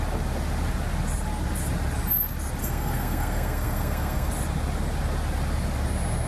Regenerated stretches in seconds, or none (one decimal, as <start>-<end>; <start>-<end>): 2.6-4.3